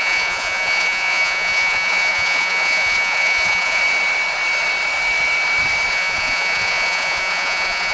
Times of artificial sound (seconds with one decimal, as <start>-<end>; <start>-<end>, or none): 0.0-3.8; 5.9-7.9